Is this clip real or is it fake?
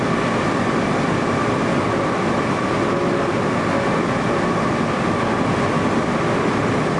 real